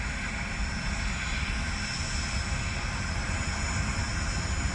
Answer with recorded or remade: recorded